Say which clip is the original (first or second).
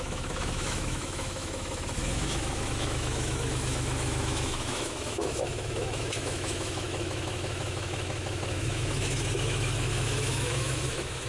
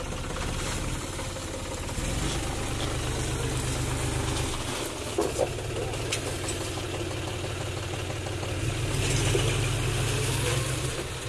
second